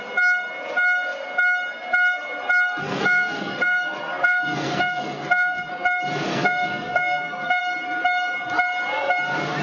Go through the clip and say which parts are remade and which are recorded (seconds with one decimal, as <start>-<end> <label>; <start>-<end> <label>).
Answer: 0.0-2.8 recorded; 2.8-5.7 remade; 5.7-6.3 recorded; 6.3-7.6 remade; 7.6-9.6 recorded